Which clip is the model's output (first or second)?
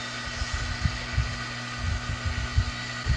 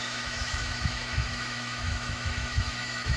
second